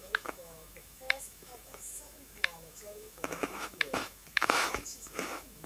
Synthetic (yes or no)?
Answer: yes